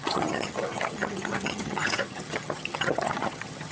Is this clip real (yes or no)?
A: no